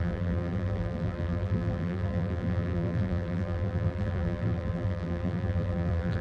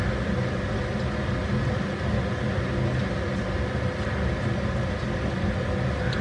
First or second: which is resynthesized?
first